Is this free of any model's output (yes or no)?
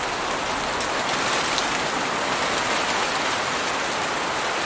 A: yes